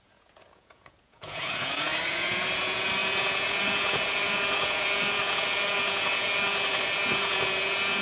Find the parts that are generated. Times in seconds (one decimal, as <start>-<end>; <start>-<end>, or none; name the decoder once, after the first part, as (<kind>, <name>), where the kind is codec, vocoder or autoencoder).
0.0-8.0 (vocoder, Vocos)